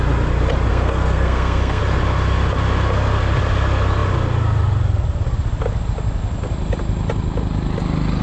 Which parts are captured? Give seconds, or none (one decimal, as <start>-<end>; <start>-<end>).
0.0-0.7; 1.8-8.2